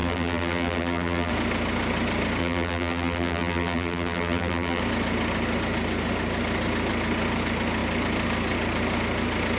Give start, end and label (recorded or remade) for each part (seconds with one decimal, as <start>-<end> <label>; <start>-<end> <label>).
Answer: 0.0-1.3 remade; 1.3-2.4 recorded; 2.4-4.8 remade; 4.8-9.6 recorded